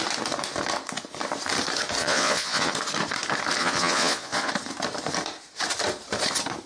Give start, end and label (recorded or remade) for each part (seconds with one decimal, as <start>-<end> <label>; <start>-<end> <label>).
0.0-2.0 recorded; 2.0-2.7 remade; 2.7-3.6 recorded; 3.6-4.5 remade; 4.5-6.7 recorded